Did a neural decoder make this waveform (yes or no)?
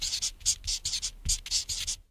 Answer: no